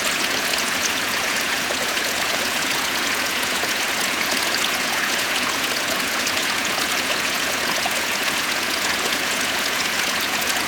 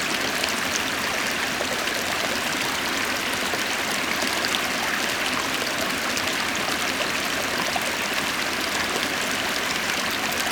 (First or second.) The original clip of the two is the second